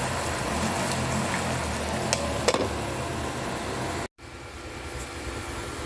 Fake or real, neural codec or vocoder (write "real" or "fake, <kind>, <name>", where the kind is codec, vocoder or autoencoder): real